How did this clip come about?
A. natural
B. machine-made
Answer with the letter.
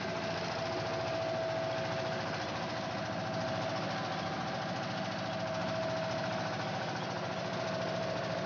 A